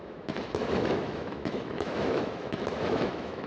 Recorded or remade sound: remade